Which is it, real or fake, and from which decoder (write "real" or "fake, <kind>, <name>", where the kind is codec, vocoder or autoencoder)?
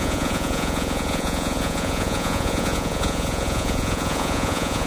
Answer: fake, vocoder, Vocos